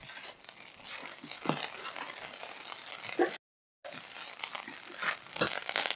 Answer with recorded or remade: recorded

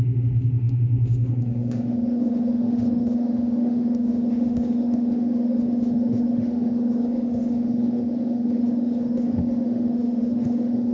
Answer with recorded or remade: remade